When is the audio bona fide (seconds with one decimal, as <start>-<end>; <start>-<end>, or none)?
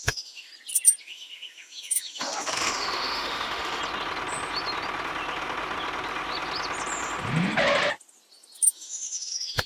0.5-1.0; 3.8-8.7